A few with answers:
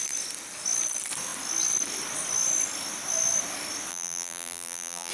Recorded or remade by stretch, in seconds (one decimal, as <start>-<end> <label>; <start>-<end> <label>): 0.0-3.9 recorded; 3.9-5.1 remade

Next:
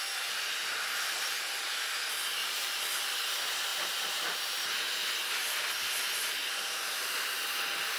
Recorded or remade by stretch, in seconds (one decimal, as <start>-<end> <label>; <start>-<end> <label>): 0.0-2.4 recorded; 2.4-3.1 remade; 3.1-3.7 recorded; 3.7-4.7 remade; 4.7-8.0 recorded

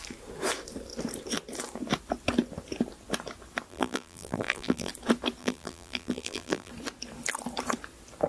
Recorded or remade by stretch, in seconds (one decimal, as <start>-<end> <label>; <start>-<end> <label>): 0.0-3.7 recorded; 3.7-4.9 remade; 4.9-5.4 recorded; 5.4-6.7 remade; 6.7-8.3 recorded

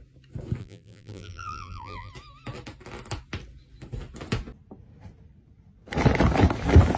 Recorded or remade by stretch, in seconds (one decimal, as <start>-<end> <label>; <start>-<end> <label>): 0.0-0.6 recorded; 0.6-2.1 remade; 2.1-7.0 recorded

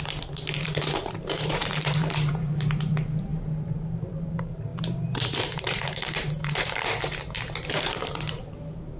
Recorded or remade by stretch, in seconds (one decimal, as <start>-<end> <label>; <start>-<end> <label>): 0.0-9.0 remade

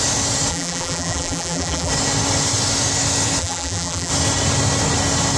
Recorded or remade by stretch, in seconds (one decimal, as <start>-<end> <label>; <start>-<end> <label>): 0.0-0.5 recorded; 0.5-1.9 remade; 1.9-3.4 recorded; 3.4-4.1 remade; 4.1-5.4 recorded

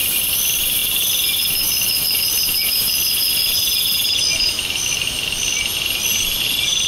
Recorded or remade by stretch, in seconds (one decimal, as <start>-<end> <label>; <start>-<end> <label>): 0.0-6.1 recorded; 6.1-6.9 remade